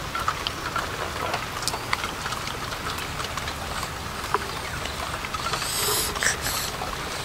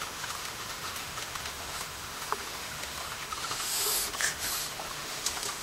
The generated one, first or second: second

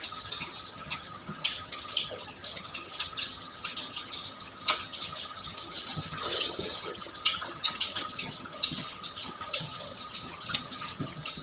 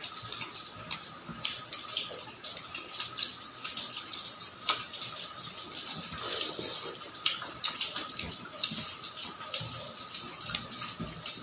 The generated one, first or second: first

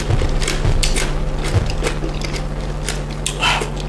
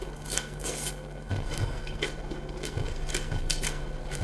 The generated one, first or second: second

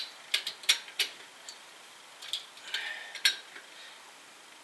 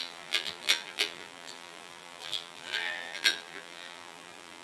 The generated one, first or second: second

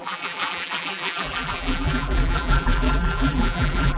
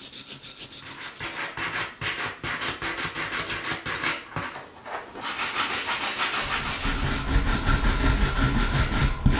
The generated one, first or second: first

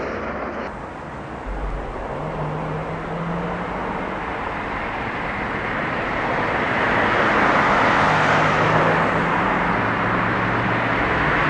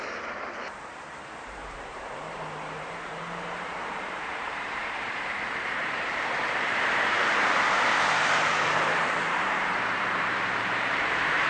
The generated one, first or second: second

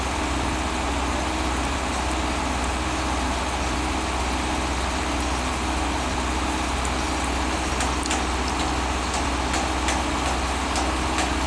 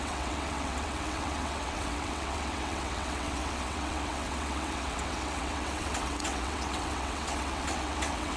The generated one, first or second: second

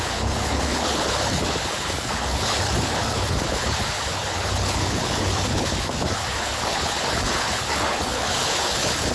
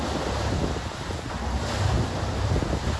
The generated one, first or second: first